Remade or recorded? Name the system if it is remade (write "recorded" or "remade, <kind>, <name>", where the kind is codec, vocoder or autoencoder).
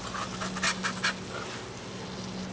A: recorded